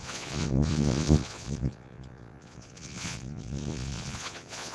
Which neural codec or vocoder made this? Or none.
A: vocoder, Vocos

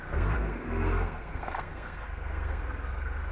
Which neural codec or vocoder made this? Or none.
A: codec, SNAC